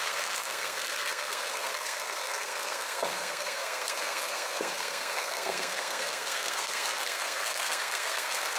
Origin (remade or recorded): remade